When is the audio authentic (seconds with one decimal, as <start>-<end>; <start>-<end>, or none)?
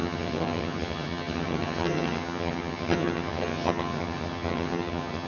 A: none